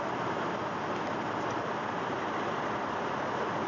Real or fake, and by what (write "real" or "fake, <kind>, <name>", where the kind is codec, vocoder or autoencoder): real